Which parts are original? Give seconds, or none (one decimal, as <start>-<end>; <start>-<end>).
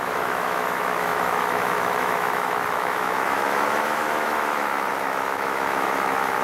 none